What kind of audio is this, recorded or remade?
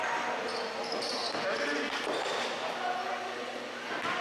recorded